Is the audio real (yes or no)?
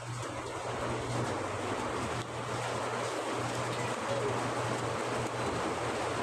yes